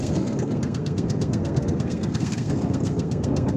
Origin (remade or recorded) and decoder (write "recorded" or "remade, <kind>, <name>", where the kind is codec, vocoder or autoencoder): remade, codec, SNAC